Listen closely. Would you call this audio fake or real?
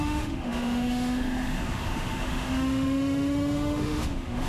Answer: fake